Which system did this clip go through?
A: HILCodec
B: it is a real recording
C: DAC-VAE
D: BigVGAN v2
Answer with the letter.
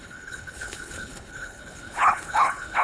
A